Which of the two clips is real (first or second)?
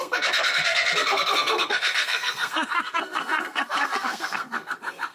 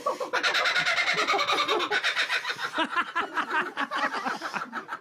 second